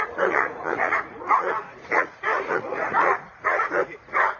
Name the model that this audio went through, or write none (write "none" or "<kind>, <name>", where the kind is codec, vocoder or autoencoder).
vocoder, Vocos